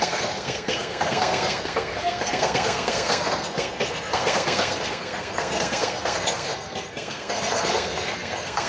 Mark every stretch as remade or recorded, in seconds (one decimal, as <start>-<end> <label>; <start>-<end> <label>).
0.0-8.7 remade